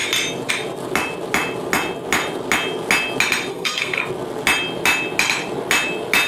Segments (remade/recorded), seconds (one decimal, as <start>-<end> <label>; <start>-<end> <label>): 0.0-3.5 recorded; 3.5-4.0 remade; 4.0-6.3 recorded